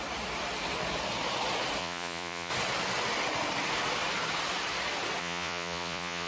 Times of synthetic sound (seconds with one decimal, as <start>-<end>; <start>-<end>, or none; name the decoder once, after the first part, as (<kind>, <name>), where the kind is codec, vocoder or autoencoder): 1.8-2.5 (vocoder, Vocos); 5.2-6.3